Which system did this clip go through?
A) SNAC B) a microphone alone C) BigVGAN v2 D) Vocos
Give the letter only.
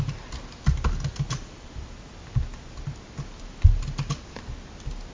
B